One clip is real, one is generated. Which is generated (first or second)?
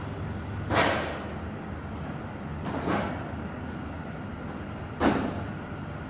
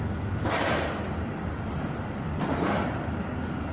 second